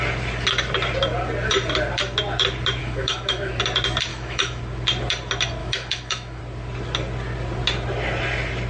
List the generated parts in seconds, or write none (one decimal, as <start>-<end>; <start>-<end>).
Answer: 2.8-3.6; 4.1-4.6; 5.6-6.4